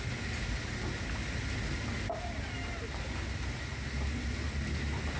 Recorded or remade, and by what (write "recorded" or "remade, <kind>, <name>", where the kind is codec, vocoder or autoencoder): recorded